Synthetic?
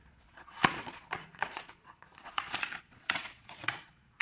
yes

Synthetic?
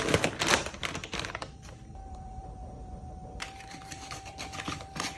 yes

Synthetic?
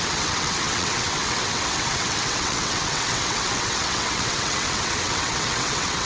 yes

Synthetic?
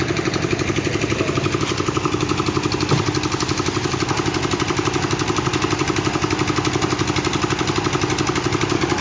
no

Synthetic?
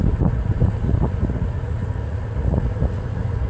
yes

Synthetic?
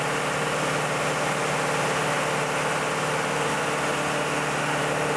no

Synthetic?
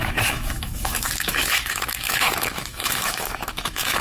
yes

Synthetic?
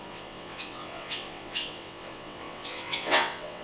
yes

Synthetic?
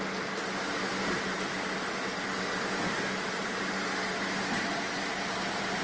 no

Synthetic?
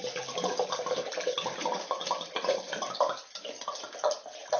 no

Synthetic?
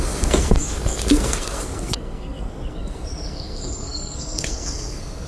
yes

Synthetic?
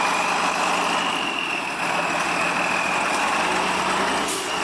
no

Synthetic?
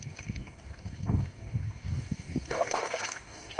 yes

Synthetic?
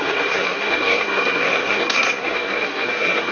yes